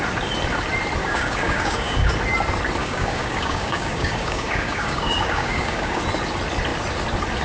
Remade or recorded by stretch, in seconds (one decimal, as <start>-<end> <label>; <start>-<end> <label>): 0.0-1.0 recorded; 1.0-2.1 remade; 2.1-2.8 recorded; 2.8-6.0 remade; 6.0-7.4 recorded